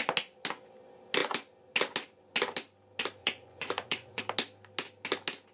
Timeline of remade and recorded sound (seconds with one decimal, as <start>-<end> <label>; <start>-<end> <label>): 0.0-3.2 recorded; 3.2-4.2 remade; 4.2-5.5 recorded